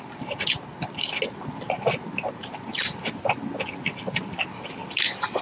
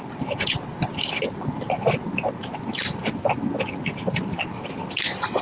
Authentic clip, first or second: first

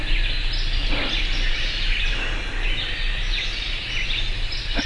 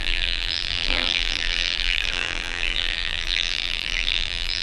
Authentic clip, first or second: first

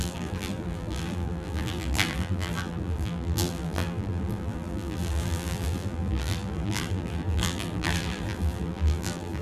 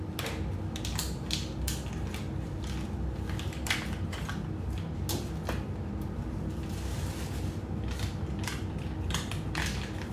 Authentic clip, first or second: second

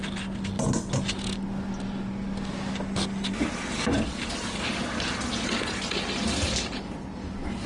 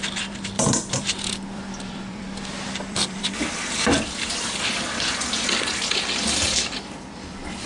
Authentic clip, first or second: first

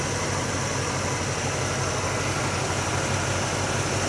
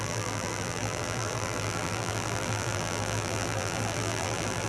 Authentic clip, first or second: first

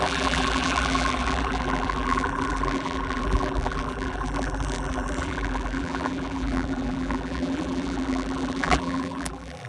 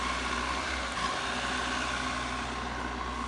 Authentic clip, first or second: second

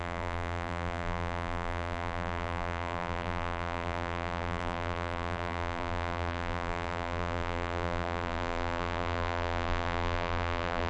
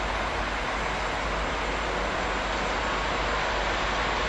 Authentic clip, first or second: second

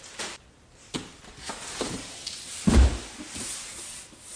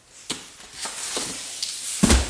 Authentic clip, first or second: second